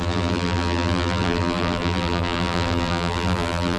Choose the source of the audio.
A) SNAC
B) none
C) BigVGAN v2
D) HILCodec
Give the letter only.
C